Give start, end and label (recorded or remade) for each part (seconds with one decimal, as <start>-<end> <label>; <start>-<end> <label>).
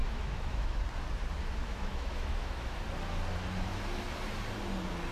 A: 0.0-0.8 remade; 0.8-1.6 recorded; 1.6-2.8 remade; 2.8-5.1 recorded